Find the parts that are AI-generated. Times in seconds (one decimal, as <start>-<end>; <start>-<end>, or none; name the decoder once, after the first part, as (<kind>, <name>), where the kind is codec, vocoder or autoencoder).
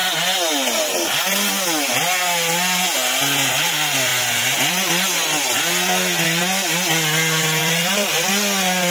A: 7.6-8.3 (vocoder, BigVGAN v2)